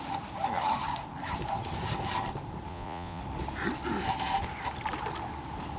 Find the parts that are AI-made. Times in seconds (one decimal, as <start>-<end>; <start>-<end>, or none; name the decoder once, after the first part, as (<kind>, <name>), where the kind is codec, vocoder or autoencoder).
2.7-3.2 (vocoder, Vocos)